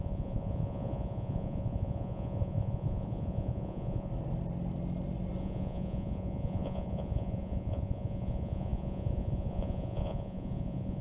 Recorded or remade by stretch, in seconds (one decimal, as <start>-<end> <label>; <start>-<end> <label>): 0.0-4.1 remade; 4.1-5.4 recorded; 5.4-11.0 remade